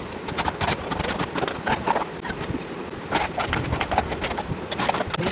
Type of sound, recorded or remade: recorded